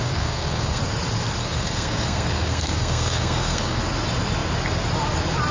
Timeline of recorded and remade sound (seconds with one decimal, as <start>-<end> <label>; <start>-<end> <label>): 0.0-0.8 remade; 0.8-1.4 recorded; 1.4-3.8 remade; 3.8-5.5 recorded